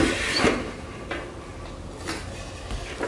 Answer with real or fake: real